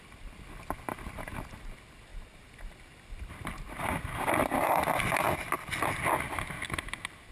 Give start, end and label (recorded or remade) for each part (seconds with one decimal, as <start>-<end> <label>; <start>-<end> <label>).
0.0-7.3 recorded